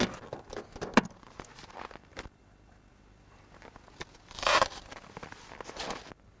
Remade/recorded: recorded